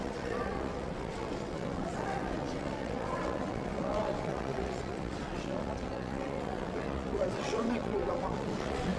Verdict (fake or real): fake